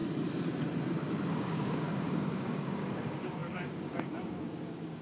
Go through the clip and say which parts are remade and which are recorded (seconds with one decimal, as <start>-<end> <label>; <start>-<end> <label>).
0.0-1.3 recorded; 1.3-5.0 remade

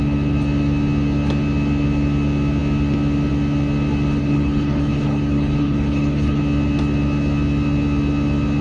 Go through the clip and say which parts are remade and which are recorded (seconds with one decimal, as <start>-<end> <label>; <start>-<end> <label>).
0.0-4.2 recorded; 4.2-6.4 remade; 6.4-8.6 recorded

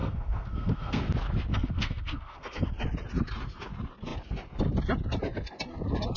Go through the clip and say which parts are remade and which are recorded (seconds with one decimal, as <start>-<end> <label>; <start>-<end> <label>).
0.0-1.0 remade; 1.0-1.5 recorded; 1.5-2.7 remade; 2.7-6.2 recorded

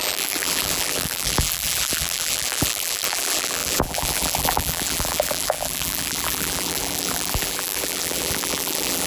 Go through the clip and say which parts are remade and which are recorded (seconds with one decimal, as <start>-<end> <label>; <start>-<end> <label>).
0.0-9.1 remade

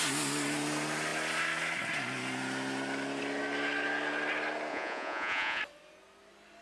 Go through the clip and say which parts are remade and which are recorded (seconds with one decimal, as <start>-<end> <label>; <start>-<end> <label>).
0.0-4.7 recorded; 4.7-5.6 remade; 5.6-6.6 recorded

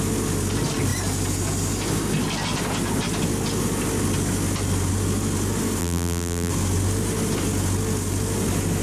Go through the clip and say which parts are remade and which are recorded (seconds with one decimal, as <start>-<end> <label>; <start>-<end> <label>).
0.0-5.8 recorded; 5.8-6.5 remade; 6.5-8.8 recorded